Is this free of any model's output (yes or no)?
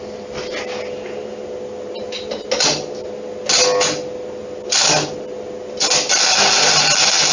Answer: yes